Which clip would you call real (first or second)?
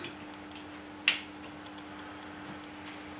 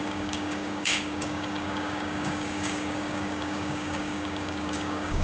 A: first